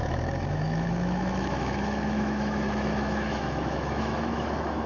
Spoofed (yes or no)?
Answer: yes